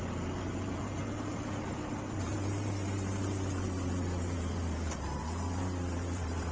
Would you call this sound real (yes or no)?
no